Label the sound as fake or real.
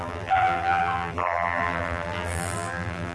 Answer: fake